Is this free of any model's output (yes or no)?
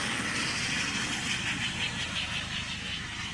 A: yes